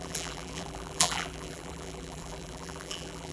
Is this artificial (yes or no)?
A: yes